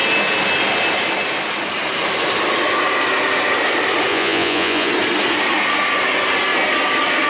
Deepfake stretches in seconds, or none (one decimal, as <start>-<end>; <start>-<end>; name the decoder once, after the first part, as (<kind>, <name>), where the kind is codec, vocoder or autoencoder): 4.1-4.9 (vocoder, Vocos)

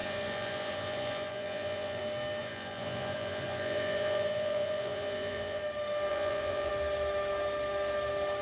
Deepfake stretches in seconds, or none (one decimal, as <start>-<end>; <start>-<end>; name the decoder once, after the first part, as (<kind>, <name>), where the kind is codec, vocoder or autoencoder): 0.0-2.0 (vocoder, Vocos); 2.4-5.6; 6.1-6.7

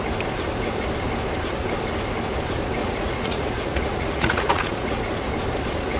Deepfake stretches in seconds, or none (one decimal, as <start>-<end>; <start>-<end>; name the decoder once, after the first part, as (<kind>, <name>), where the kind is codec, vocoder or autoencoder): 2.8-5.0 (vocoder, Vocos)

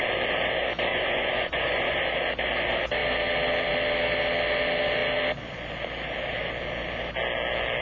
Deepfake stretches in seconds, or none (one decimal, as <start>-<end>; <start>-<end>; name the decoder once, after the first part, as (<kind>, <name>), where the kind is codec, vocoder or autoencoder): 0.9-2.0 (vocoder, Vocos)

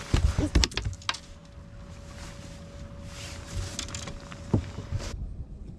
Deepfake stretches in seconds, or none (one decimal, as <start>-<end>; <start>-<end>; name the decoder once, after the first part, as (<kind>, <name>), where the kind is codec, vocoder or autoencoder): none